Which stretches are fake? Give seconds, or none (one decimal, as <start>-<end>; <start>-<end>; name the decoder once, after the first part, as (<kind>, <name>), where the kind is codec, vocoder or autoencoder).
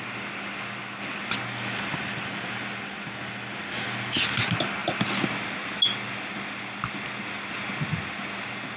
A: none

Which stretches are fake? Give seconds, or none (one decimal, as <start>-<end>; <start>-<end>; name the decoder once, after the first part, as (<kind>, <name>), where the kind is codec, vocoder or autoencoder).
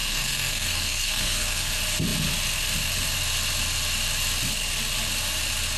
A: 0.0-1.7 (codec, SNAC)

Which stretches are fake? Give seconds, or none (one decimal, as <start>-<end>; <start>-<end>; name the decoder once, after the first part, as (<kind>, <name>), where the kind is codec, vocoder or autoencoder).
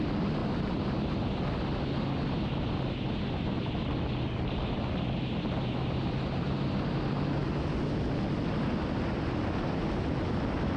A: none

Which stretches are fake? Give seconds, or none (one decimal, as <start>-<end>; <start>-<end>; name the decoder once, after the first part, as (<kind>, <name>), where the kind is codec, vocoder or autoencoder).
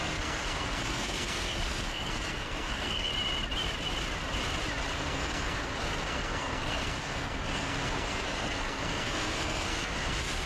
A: 0.0-3.1 (codec, SNAC); 4.9-10.5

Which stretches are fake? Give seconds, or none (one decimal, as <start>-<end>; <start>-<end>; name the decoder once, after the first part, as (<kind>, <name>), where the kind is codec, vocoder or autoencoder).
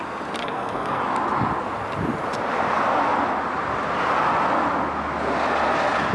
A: 0.4-1.0 (codec, SNAC)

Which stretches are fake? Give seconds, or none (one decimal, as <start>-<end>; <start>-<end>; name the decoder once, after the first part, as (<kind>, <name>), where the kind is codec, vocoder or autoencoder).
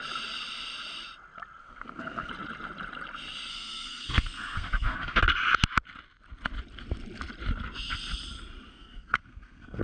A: 1.6-2.3 (codec, SNAC); 3.5-5.2; 8.7-9.8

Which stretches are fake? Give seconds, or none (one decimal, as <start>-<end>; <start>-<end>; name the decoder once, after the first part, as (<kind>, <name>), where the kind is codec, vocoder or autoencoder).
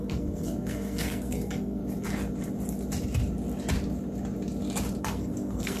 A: 0.0-1.8 (codec, SNAC); 5.0-5.8